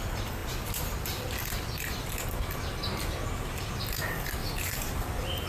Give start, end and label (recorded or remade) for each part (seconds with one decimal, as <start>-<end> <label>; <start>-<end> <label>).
0.0-4.4 recorded; 4.4-4.9 remade; 4.9-5.5 recorded